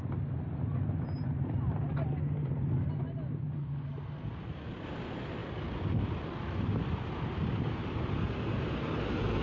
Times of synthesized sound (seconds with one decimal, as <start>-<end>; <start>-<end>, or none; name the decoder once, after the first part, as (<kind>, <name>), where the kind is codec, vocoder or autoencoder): none